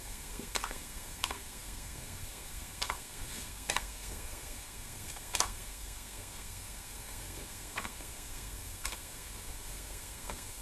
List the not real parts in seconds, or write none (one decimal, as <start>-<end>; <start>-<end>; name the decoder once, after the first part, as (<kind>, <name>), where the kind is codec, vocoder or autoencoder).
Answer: 0.0-10.6 (codec, SNAC)